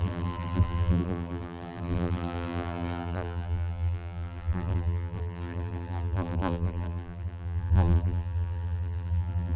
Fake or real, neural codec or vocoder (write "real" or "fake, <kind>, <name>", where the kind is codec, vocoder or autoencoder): fake, vocoder, BigVGAN v2